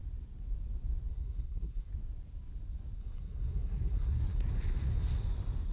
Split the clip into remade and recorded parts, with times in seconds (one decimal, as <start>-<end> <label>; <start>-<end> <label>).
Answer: 0.0-1.1 recorded; 1.1-1.9 remade; 1.9-3.0 recorded; 3.0-4.5 remade; 4.5-5.7 recorded